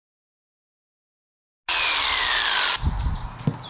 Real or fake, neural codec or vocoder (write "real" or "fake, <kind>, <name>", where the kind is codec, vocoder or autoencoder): real